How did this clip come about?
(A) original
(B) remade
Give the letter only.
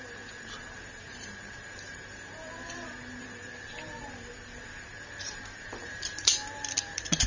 B